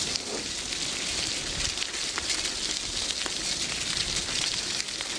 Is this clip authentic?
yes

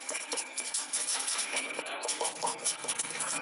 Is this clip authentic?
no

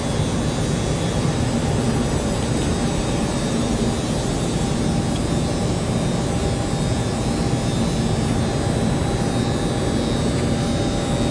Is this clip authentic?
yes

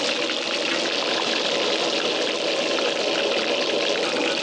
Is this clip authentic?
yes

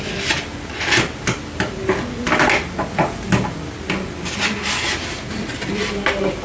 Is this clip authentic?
yes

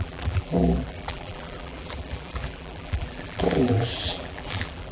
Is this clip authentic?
no